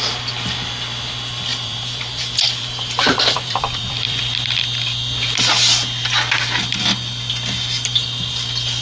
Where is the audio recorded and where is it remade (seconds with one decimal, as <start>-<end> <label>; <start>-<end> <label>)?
0.0-1.5 recorded; 1.5-4.2 remade; 4.2-8.8 recorded